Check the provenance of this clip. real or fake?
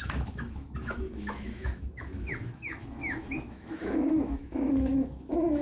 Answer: fake